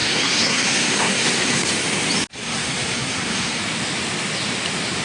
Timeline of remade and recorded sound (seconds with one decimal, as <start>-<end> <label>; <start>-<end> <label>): 0.0-1.7 remade; 1.7-2.3 recorded; 2.3-3.6 remade; 3.6-5.0 recorded